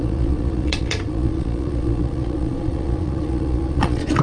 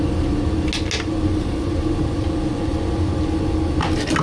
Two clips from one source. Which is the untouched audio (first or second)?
second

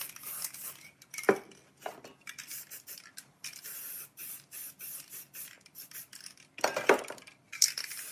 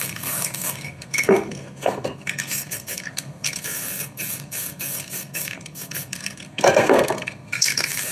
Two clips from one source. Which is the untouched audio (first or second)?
first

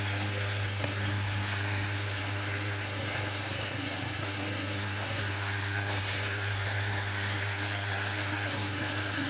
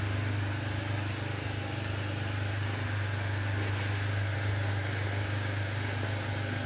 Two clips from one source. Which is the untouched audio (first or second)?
second